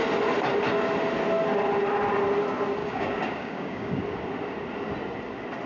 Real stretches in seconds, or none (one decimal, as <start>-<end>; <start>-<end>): 0.0-2.8; 4.0-5.7